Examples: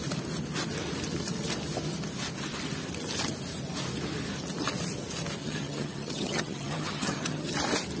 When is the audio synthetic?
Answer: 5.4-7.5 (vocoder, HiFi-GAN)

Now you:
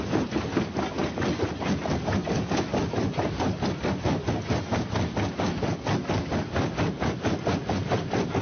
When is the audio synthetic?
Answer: none

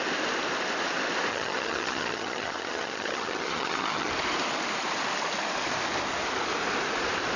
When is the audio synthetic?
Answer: 1.3-4.1 (vocoder, HiFi-GAN)

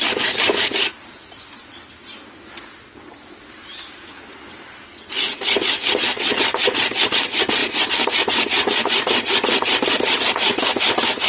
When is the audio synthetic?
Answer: none